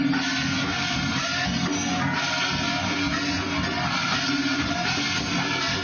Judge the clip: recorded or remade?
recorded